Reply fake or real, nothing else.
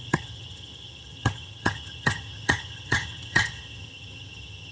fake